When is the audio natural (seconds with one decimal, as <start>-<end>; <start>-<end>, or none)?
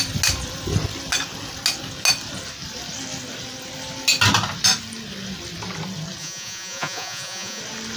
0.0-6.2; 7.6-8.0